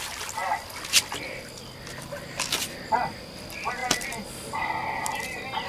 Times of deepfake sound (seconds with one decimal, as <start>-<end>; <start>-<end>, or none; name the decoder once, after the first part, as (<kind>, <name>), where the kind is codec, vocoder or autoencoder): none

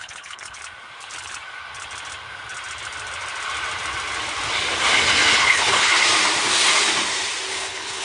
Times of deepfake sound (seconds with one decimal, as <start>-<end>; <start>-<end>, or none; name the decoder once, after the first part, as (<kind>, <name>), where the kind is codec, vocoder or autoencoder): 0.0-0.6 (codec, HILCodec); 5.4-5.9; 7.5-8.0

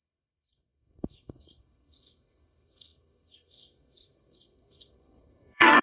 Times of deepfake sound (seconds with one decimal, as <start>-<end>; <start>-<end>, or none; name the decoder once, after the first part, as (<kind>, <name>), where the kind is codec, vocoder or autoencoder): 0.0-5.8 (codec, SNAC)

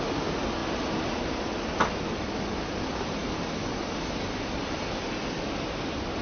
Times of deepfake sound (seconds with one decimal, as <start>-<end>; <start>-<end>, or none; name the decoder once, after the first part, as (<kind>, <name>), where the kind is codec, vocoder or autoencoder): none